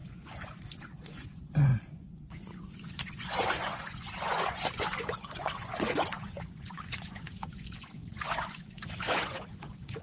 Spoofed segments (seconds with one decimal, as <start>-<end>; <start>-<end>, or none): 0.0-10.0

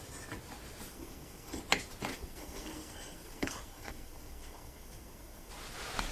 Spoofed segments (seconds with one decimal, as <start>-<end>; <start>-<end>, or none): 0.9-1.6; 2.1-5.5

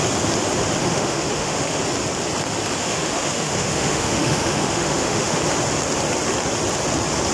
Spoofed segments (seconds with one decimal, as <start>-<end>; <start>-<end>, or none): 0.8-1.8; 2.8-5.4

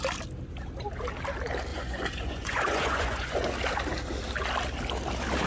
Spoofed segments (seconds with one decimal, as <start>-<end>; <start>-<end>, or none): 1.7-3.5

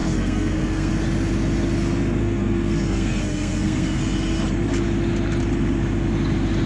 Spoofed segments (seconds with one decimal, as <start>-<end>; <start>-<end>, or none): 0.0-0.9; 2.2-4.0